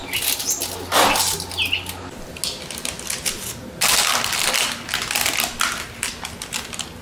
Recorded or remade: recorded